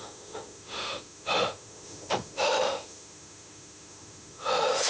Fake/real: fake